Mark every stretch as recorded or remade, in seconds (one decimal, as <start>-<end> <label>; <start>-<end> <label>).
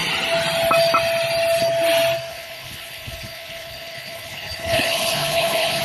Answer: 0.0-2.3 recorded; 2.3-5.8 remade